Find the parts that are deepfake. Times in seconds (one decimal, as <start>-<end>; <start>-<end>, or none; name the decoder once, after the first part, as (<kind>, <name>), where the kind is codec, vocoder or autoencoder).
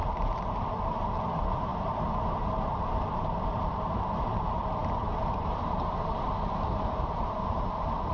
0.0-8.1 (vocoder, BigVGAN v2)